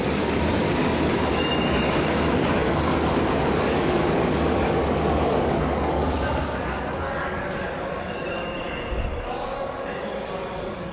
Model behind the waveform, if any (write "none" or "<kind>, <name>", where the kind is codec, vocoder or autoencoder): codec, DAC